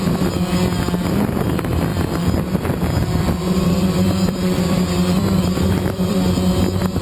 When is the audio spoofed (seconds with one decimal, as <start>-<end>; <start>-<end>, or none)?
1.9-6.1